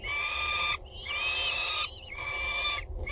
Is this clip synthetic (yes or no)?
no